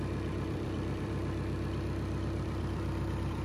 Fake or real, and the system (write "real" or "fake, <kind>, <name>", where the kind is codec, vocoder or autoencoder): fake, vocoder, BigVGAN v2